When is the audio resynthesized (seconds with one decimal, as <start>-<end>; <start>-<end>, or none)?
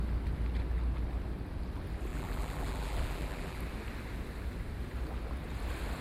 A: 2.1-3.6